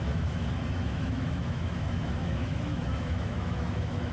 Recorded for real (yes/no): no